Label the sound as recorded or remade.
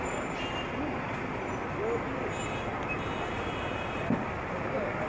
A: recorded